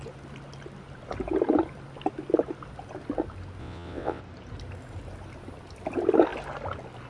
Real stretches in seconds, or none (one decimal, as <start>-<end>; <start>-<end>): 0.0-3.6; 4.2-7.1

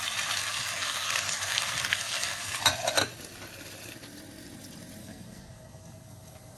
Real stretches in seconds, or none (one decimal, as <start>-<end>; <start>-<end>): 0.0-0.4; 2.6-5.0

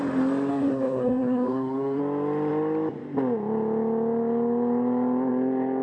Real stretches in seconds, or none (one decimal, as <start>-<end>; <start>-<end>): 0.0-0.5; 2.0-5.8